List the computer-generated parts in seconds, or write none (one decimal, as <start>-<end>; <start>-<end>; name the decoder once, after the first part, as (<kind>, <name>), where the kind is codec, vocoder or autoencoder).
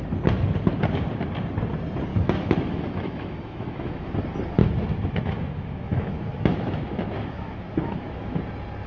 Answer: 2.1-4.1 (autoencoder, DAC-VAE); 4.6-8.4